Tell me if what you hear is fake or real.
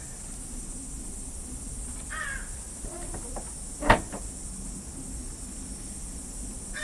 real